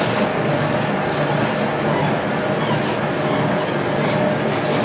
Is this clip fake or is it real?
real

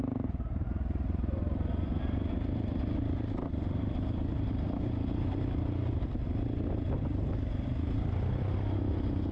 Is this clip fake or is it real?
real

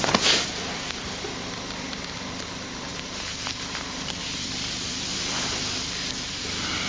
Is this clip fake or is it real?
real